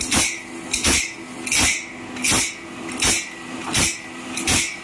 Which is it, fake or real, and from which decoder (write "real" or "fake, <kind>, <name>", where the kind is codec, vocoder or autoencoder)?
real